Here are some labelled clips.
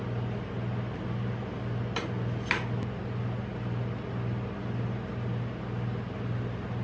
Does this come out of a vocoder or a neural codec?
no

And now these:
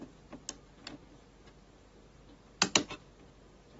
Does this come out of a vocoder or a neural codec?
no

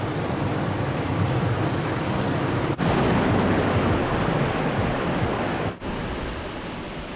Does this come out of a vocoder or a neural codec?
no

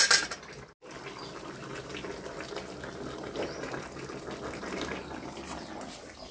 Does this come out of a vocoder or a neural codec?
no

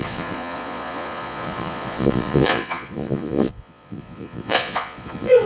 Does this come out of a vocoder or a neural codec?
yes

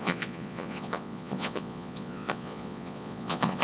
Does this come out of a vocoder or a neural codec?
yes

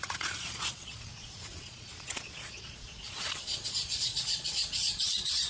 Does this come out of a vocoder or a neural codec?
yes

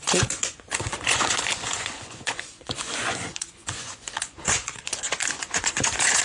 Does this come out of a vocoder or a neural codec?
yes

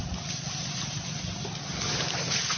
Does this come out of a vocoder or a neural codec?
no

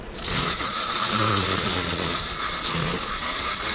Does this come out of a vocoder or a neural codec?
yes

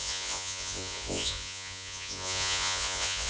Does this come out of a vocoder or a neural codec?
yes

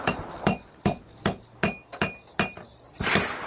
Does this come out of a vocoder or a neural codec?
no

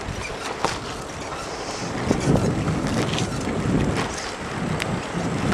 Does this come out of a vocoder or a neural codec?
no